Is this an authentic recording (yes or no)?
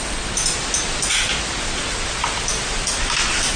yes